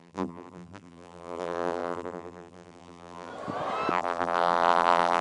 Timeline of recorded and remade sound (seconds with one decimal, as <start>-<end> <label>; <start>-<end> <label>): 0.0-3.3 remade; 3.3-3.9 recorded; 3.9-5.2 remade